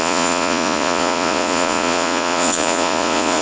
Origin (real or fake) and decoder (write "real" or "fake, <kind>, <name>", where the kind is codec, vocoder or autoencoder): fake, vocoder, Vocos